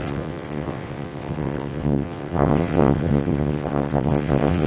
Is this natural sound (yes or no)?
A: no